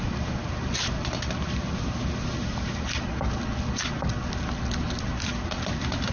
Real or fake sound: real